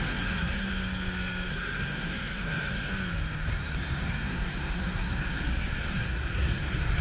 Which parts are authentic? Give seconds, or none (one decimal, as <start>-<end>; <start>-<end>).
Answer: 0.7-1.5; 2.9-3.5